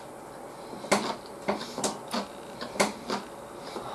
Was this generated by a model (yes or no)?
no